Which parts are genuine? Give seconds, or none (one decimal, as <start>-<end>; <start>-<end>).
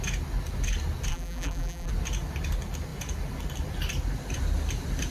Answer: 0.0-1.1; 1.9-5.1